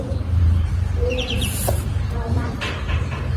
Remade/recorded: remade